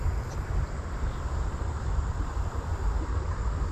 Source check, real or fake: fake